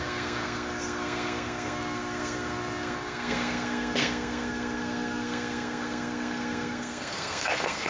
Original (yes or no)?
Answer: no